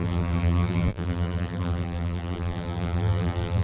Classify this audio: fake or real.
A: fake